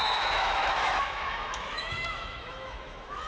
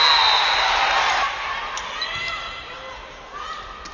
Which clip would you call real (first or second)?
second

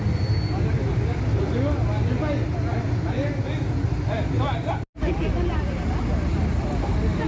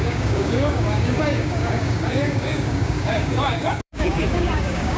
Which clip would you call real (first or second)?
first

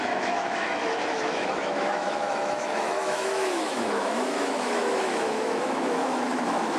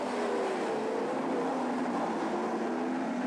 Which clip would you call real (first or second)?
second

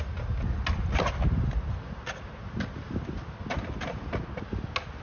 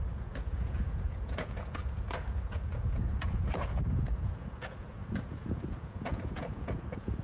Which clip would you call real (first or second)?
first